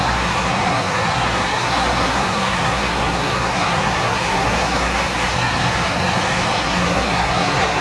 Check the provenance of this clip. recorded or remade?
remade